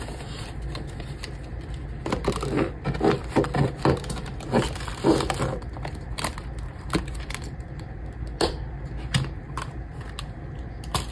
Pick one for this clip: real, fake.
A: real